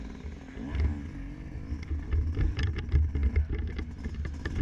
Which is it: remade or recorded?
recorded